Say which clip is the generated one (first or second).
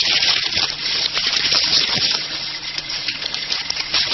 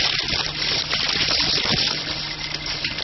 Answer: first